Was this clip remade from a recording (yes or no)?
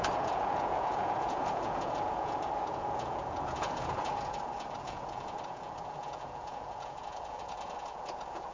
yes